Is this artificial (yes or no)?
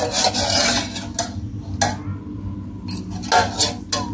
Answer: no